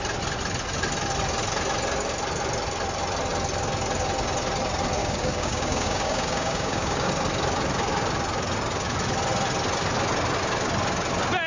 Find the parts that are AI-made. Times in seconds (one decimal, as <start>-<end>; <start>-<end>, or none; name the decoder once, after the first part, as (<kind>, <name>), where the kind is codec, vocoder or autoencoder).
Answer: 5.0-7.1 (codec, DAC)